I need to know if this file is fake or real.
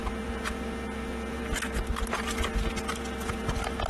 real